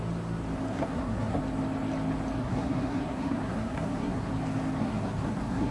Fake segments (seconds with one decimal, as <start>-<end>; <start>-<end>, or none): 0.7-1.4; 2.4-4.3; 4.8-5.7